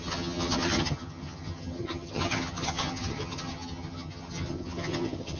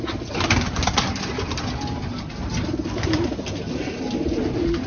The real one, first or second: second